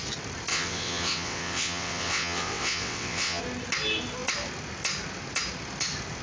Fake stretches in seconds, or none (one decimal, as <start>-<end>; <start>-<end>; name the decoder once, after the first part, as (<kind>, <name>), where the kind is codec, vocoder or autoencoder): 0.5-3.4 (vocoder, WaveNeXt)